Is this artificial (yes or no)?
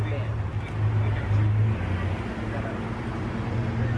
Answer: no